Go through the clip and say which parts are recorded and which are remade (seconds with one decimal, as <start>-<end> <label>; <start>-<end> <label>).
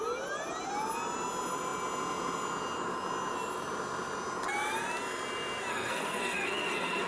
0.0-5.7 recorded; 5.7-7.1 remade